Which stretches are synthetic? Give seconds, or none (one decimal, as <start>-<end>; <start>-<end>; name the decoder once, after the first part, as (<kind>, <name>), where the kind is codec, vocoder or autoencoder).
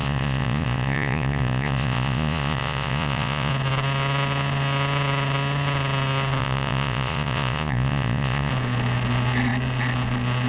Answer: 0.0-3.5 (vocoder, Vocos); 6.4-8.5